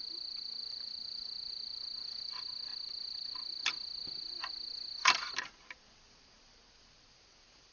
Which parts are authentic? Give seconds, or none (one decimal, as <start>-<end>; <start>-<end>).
0.0-7.7